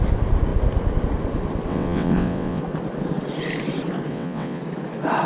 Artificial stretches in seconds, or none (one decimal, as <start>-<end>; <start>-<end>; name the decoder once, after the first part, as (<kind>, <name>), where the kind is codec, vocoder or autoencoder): 1.7-2.6 (vocoder, WaveNeXt); 4.1-4.6